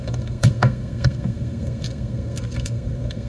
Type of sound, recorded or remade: remade